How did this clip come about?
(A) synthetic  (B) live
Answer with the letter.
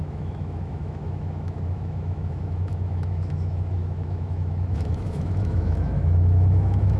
A